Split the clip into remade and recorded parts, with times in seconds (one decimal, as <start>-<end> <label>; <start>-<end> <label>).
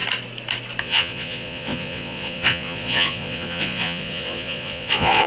0.0-0.8 recorded; 0.8-5.3 remade